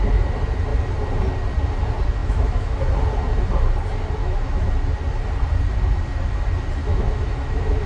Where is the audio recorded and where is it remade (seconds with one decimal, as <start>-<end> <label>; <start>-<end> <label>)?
0.0-2.2 recorded; 2.2-2.8 remade; 2.8-4.2 recorded; 4.2-4.7 remade; 4.7-6.8 recorded; 6.8-7.9 remade